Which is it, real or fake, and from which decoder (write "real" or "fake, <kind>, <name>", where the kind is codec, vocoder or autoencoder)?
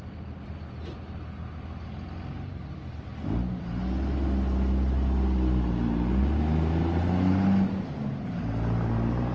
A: real